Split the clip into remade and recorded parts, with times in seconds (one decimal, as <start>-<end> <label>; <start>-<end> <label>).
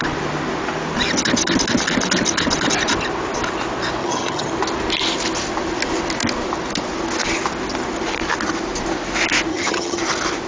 0.0-4.0 recorded; 4.0-4.5 remade; 4.5-9.5 recorded; 9.5-10.0 remade; 10.0-10.5 recorded